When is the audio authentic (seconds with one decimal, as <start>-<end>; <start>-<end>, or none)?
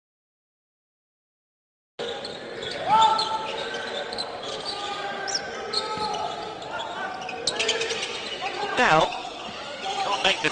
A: 0.0-8.1